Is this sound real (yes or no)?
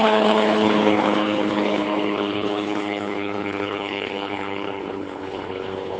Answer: no